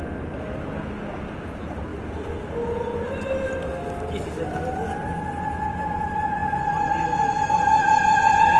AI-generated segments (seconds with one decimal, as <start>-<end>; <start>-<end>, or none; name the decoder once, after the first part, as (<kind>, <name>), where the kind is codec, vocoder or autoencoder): 7.8-8.6 (vocoder, Vocos)